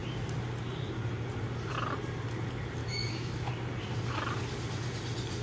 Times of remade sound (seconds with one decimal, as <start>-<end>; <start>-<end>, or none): 2.8-3.5